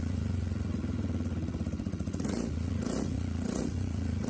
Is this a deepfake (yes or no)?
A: yes